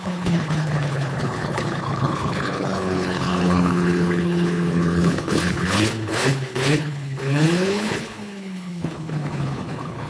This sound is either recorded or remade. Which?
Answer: remade